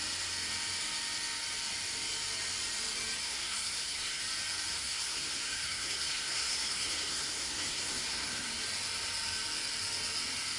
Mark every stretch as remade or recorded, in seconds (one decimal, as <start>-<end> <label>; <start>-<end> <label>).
0.0-3.2 recorded; 3.2-4.2 remade; 4.2-4.7 recorded; 4.7-8.6 remade; 8.6-10.6 recorded